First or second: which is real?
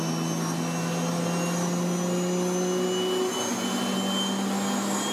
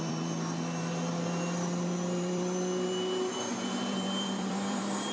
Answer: first